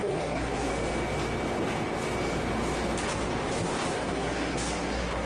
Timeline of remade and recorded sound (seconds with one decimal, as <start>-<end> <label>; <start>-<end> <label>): 0.0-0.7 remade; 0.7-3.9 recorded; 3.9-5.3 remade